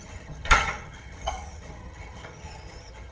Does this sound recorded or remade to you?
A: remade